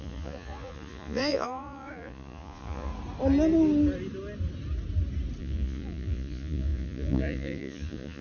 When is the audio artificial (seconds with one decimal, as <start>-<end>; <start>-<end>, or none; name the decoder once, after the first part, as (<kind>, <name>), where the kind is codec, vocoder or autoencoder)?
0.0-2.9 (vocoder, Vocos); 5.4-8.2